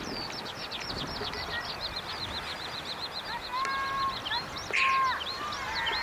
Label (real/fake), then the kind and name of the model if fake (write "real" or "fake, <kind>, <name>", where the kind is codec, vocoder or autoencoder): real